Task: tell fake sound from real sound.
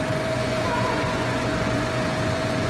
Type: fake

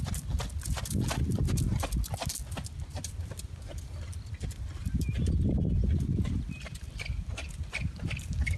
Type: real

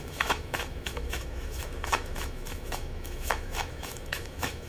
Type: fake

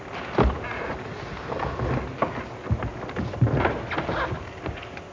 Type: real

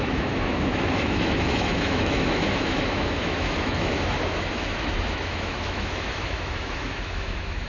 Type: fake